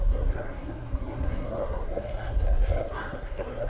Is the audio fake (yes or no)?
yes